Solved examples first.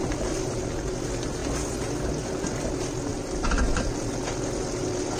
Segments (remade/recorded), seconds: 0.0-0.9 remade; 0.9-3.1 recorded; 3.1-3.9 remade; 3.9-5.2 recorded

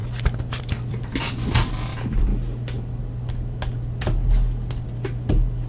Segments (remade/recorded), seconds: 0.0-0.6 recorded; 0.6-2.3 remade; 2.3-5.7 recorded

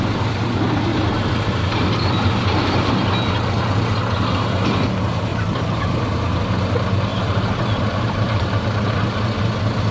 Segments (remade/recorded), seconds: 0.0-0.9 recorded; 0.9-2.9 remade; 2.9-5.3 recorded; 5.3-6.4 remade; 6.4-7.1 recorded; 7.1-8.9 remade; 8.9-9.9 recorded